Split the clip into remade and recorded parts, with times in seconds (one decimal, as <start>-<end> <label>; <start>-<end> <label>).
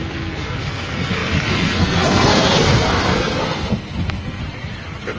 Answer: 0.0-4.4 remade; 4.4-5.2 recorded